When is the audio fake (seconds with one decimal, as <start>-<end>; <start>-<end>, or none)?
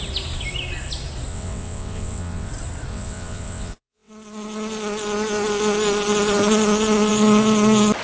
1.3-2.5; 2.9-4.1